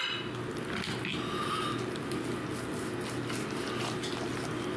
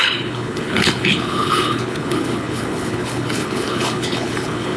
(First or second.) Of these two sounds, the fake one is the second